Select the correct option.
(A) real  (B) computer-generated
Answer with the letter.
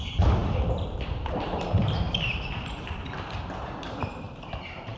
B